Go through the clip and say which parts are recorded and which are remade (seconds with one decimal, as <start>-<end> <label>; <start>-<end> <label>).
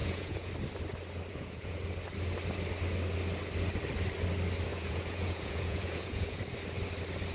0.0-0.5 remade; 0.5-1.3 recorded; 1.3-1.8 remade; 1.8-4.7 recorded; 4.7-6.4 remade; 6.4-7.3 recorded